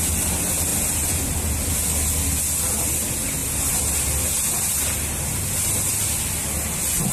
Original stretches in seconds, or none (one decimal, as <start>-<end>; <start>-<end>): 0.0-7.1